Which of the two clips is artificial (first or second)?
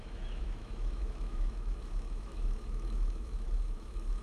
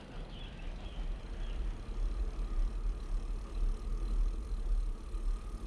first